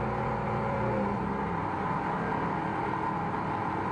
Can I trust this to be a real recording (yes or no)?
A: yes